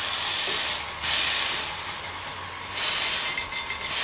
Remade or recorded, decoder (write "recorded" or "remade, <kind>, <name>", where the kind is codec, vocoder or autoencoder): recorded